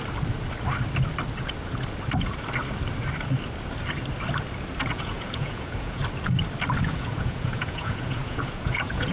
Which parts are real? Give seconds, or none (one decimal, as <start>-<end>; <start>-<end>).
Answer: 0.0-4.9; 6.0-6.8